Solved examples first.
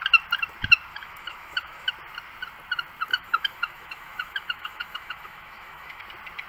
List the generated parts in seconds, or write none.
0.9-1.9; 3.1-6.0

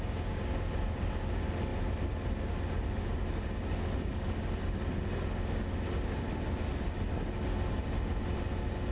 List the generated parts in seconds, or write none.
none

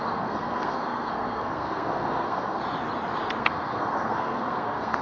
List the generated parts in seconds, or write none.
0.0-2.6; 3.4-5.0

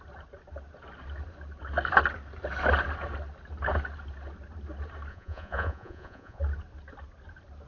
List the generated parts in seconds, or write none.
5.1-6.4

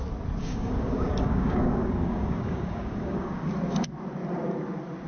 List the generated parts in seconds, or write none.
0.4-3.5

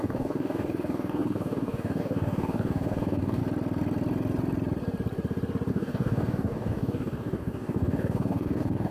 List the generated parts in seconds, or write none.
0.0-3.4; 5.7-8.9

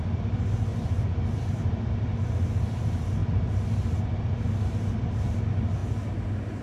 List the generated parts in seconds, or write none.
none

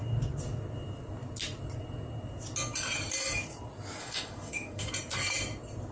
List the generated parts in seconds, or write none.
4.0-4.9